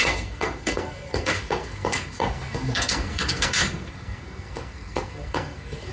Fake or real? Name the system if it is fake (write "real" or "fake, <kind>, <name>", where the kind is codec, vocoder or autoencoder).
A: fake, codec, SNAC